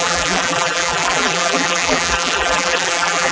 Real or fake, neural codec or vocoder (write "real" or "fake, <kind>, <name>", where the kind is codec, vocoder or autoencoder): fake, vocoder, BigVGAN v2